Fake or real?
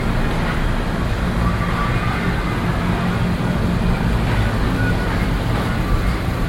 real